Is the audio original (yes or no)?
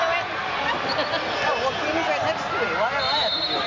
yes